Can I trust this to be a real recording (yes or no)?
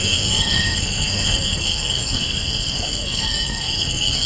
no